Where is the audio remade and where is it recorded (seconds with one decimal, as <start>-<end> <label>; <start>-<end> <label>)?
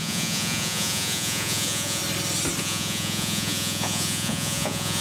0.0-2.0 remade; 2.0-2.6 recorded; 2.6-5.0 remade